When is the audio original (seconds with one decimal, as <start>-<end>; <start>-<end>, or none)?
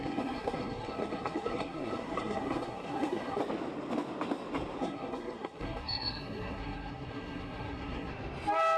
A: 3.4-4.8; 8.1-8.8